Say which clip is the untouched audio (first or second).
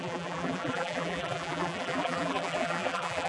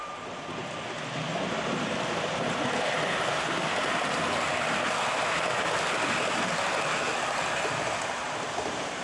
second